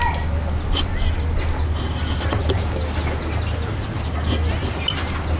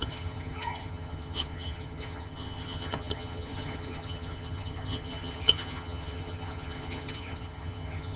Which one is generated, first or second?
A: second